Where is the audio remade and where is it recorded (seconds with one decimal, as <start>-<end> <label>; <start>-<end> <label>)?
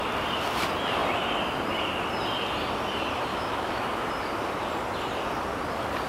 0.0-3.3 recorded; 3.3-4.1 remade; 4.1-6.1 recorded